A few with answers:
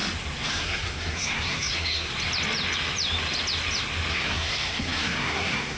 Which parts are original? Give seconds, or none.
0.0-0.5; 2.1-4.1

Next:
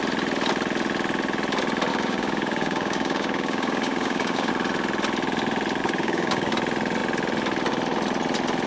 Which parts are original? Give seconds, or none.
0.0-1.9; 4.5-5.8; 6.5-8.7